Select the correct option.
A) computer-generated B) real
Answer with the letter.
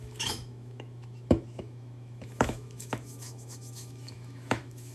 A